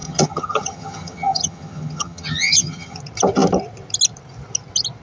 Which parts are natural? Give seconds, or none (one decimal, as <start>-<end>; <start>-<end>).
3.0-5.0